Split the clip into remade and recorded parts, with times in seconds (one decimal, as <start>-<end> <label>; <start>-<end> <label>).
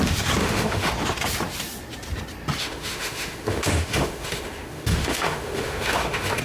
0.0-0.4 recorded; 0.4-0.9 remade; 0.9-2.6 recorded; 2.6-6.4 remade